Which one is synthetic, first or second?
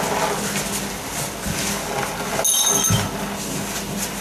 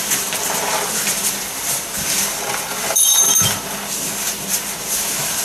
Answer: second